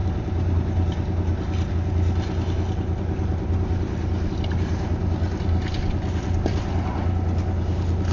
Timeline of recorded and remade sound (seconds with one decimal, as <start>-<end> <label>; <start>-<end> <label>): 0.0-8.1 recorded